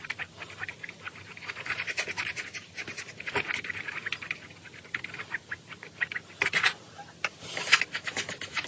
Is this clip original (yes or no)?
yes